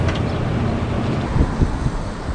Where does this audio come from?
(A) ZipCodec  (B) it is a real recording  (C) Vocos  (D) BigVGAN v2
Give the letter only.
B